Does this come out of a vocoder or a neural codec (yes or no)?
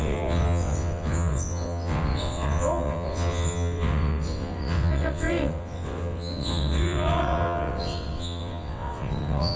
yes